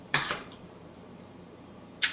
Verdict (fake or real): fake